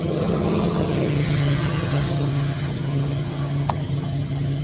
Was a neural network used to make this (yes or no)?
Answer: yes